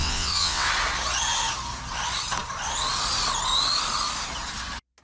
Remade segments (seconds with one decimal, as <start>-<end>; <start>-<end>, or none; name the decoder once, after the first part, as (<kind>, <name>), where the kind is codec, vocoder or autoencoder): 0.0-0.7 (vocoder, WaveNeXt)